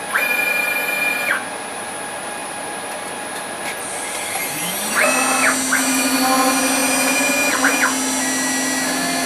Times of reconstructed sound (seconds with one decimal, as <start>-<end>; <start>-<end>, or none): none